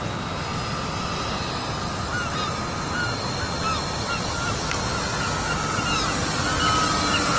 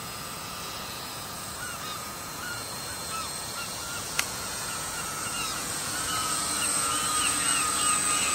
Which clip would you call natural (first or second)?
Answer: first